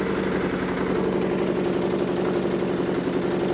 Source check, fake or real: real